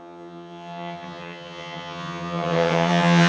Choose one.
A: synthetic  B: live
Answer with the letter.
A